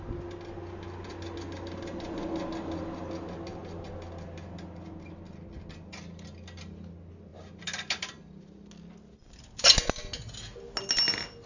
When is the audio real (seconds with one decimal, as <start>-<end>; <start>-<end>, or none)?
0.0-11.5

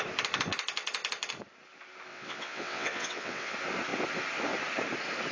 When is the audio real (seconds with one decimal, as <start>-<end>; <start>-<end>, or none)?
0.0-2.1; 3.5-5.3

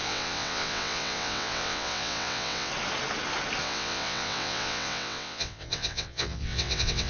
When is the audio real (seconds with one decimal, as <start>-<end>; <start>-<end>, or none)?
2.7-3.6

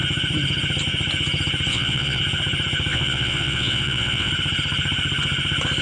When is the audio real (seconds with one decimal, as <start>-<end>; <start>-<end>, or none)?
0.0-1.7; 2.2-2.9; 4.3-5.8

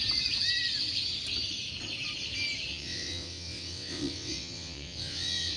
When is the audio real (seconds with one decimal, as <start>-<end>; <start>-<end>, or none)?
0.0-2.7

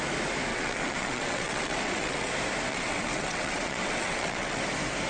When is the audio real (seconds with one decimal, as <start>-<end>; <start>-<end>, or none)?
0.0-0.5; 2.3-2.7; 4.6-5.1

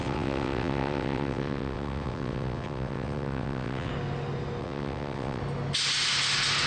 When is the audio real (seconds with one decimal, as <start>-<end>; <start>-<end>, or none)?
3.9-4.6; 5.4-6.7